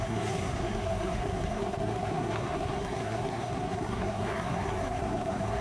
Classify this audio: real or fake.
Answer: fake